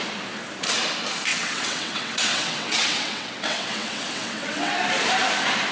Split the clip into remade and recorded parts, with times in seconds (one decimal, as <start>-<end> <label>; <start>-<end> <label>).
0.0-1.3 recorded; 1.3-4.7 remade; 4.7-5.7 recorded